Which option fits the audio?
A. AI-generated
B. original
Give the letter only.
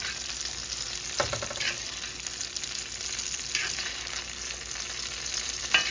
B